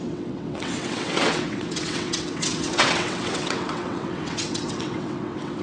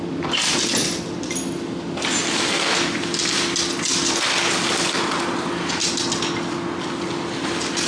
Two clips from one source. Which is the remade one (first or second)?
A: first